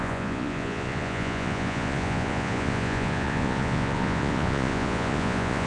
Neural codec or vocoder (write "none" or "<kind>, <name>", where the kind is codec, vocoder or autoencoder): vocoder, Vocos